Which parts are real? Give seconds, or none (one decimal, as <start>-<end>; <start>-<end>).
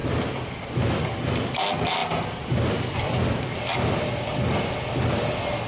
0.0-5.7